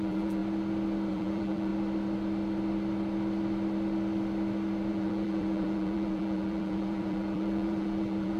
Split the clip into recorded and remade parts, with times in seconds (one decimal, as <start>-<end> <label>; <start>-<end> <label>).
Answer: 0.0-0.4 remade; 0.4-1.1 recorded; 1.1-1.7 remade; 1.7-4.9 recorded; 4.9-8.4 remade